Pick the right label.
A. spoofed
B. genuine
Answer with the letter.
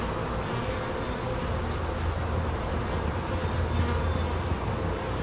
B